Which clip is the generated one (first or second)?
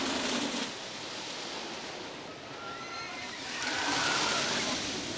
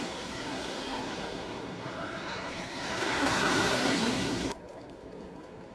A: second